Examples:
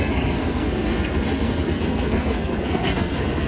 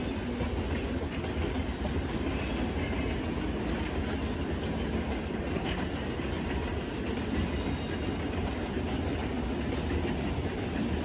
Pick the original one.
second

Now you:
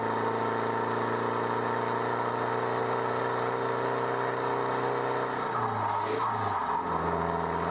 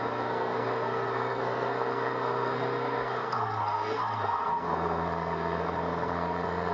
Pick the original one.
first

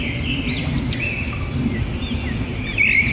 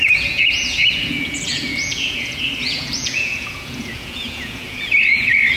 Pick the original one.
first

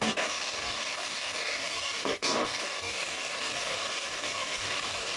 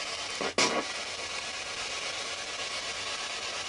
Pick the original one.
second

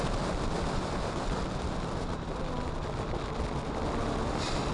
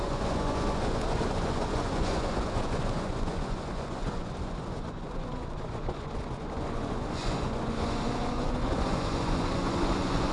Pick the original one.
first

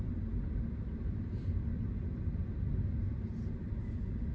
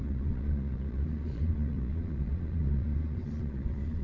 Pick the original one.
first